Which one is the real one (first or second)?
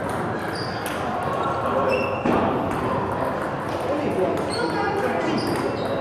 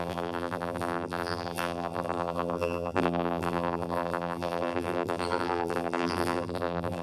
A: first